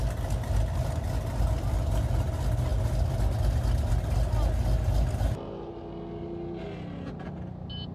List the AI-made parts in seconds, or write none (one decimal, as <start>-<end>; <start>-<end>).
none